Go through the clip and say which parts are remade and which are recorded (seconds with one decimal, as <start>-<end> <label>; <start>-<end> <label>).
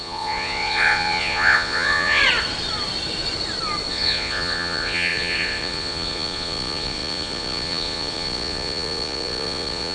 0.0-2.2 remade; 2.2-3.9 recorded; 3.9-9.9 remade